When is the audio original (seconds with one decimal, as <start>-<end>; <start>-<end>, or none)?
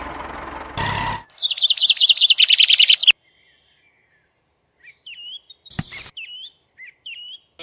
0.0-7.6